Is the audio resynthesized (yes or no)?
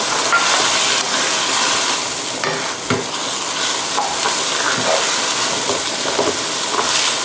no